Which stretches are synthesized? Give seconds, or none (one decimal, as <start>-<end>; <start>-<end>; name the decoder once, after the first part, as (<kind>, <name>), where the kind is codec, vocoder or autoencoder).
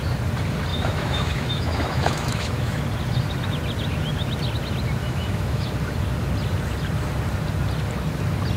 0.7-2.8 (autoencoder, DAC-VAE); 5.0-5.7